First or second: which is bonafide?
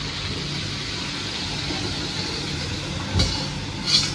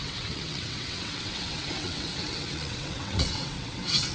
first